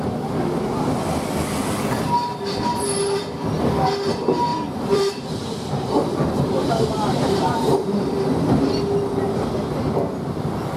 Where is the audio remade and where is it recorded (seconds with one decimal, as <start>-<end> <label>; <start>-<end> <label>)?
0.0-4.5 recorded; 4.5-8.1 remade; 8.1-10.8 recorded